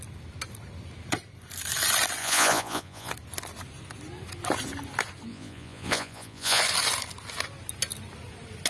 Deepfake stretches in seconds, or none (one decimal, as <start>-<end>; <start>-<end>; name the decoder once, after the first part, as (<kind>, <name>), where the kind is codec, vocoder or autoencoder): 2.2-3.1 (vocoder, Vocos); 5.3-6.6